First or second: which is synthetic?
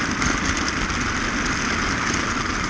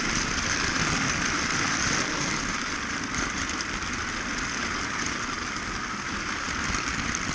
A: second